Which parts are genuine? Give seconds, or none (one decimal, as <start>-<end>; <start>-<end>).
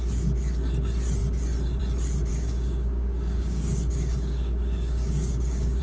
0.0-2.3